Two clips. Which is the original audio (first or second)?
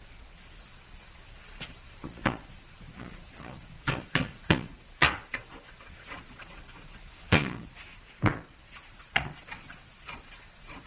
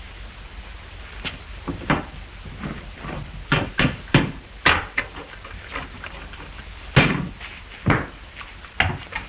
second